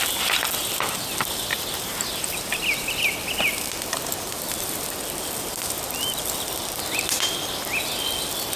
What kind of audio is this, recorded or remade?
recorded